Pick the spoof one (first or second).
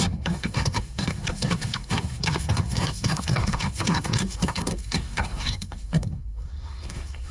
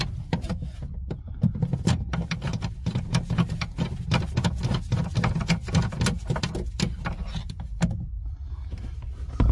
first